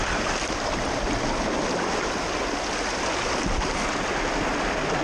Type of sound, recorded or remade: recorded